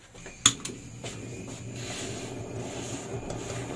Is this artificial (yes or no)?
no